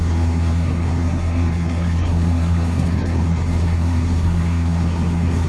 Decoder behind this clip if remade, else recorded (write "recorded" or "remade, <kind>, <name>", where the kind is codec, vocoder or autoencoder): remade, codec, SNAC